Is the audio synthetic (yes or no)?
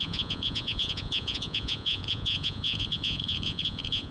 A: yes